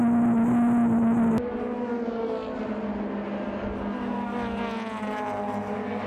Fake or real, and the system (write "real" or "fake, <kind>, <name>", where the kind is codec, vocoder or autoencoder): real